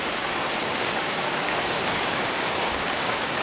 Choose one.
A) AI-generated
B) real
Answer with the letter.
A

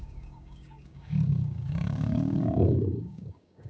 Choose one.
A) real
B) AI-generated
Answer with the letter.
B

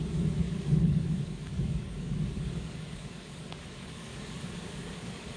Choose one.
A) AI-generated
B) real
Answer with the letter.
A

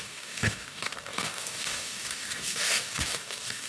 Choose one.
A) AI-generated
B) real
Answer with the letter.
A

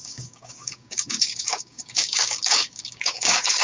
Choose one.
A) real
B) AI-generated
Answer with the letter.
B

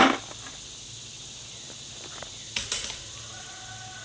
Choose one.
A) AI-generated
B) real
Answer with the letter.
B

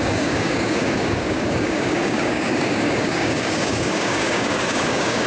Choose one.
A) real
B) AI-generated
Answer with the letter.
B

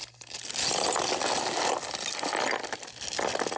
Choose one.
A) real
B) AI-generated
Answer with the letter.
A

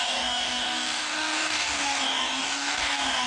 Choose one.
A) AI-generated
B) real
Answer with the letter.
A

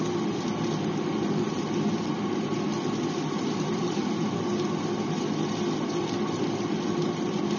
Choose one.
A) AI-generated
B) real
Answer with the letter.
B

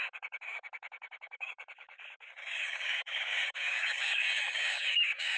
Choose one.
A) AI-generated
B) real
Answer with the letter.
A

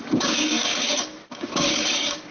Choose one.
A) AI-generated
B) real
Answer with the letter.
A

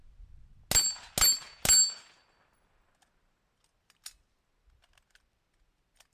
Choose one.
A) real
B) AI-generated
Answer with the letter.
A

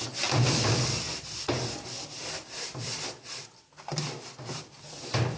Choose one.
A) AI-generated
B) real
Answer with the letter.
B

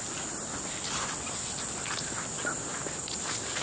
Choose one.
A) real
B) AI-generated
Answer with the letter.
A